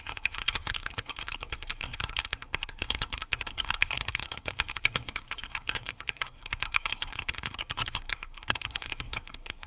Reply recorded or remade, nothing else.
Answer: remade